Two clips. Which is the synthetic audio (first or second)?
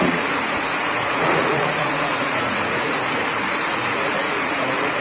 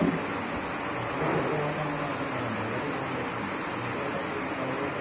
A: first